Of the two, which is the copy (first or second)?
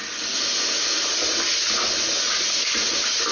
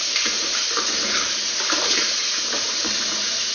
second